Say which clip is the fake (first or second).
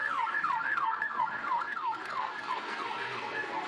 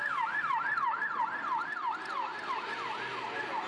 first